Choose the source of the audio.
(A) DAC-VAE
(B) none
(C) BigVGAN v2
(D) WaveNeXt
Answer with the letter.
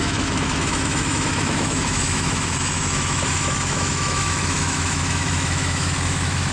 A